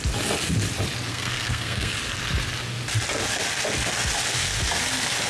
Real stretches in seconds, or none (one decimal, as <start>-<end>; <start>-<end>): 0.0-1.1; 1.9-5.3